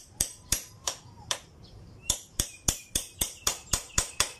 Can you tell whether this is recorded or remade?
remade